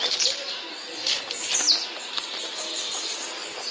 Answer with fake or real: real